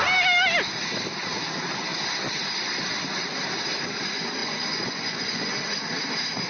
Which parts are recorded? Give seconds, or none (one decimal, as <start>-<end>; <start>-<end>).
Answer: 0.0-4.4; 5.7-6.5